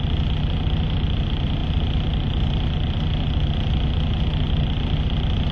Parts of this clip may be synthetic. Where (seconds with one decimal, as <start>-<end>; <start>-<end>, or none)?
none